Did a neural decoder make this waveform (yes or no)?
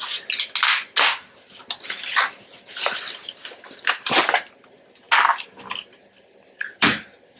no